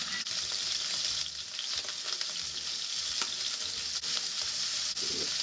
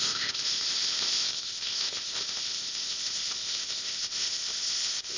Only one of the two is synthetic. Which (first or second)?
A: second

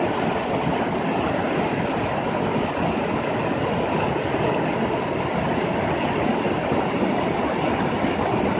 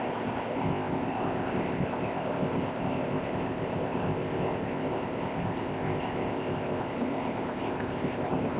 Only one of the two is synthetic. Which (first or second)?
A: second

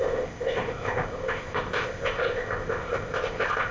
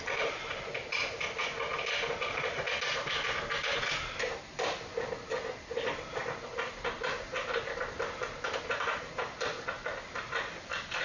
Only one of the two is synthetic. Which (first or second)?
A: first